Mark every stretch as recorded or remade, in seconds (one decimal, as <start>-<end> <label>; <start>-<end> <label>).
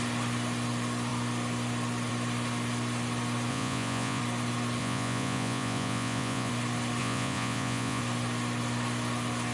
0.0-3.5 recorded; 3.5-4.2 remade; 4.2-4.8 recorded; 4.8-6.5 remade; 6.5-7.0 recorded; 7.0-8.0 remade; 8.0-9.5 recorded